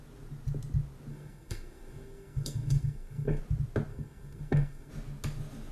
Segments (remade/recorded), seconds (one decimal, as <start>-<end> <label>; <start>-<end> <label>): 0.0-1.1 recorded; 1.1-3.4 remade; 3.4-3.9 recorded; 3.9-4.9 remade; 4.9-5.7 recorded